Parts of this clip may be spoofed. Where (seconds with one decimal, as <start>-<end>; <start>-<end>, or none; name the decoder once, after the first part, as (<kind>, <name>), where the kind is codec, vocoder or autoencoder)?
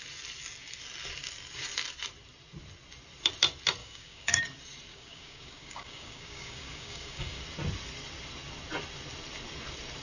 3.8-4.4 (codec, DAC); 4.9-7.4